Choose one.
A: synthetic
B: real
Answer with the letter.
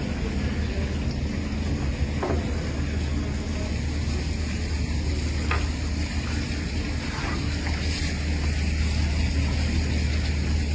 B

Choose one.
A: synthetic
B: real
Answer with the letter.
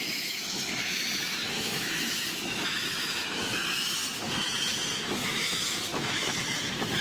A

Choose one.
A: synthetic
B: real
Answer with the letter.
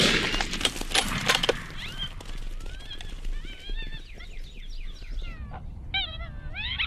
B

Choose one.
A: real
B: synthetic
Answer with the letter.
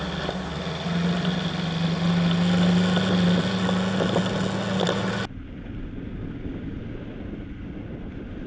A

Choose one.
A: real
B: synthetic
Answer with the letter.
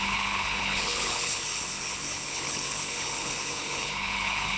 B